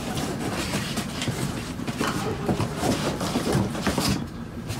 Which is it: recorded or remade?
remade